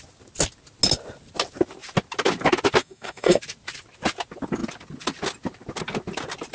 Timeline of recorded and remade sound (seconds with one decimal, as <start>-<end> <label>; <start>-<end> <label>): 0.0-2.8 recorded; 2.8-3.4 remade; 3.4-6.5 recorded